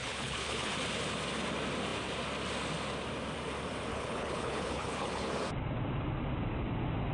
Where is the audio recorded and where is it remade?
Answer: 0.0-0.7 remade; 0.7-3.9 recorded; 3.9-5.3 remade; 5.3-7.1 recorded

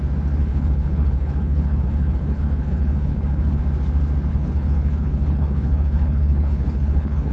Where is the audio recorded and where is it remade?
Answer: 0.0-0.4 recorded; 0.4-3.6 remade; 3.6-4.3 recorded; 4.3-7.3 remade

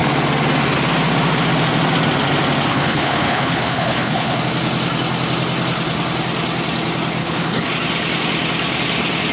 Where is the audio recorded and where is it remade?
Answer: 0.0-2.7 recorded; 2.7-4.4 remade; 4.4-7.2 recorded; 7.2-7.7 remade; 7.7-9.3 recorded